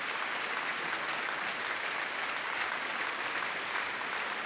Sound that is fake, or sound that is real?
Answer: real